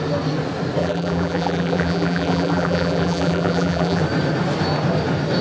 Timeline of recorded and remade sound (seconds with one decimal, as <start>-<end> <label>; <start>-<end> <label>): 0.0-0.8 recorded; 0.8-4.0 remade; 4.0-5.4 recorded